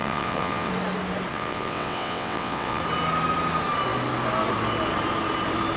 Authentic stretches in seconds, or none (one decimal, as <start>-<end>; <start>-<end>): 0.7-1.3; 2.8-5.8